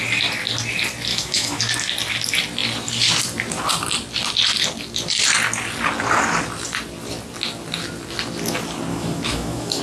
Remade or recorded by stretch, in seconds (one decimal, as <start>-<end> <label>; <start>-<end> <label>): 0.0-1.1 recorded; 1.1-1.6 remade; 1.6-8.9 recorded; 8.9-9.8 remade